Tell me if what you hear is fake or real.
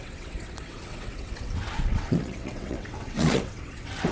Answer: fake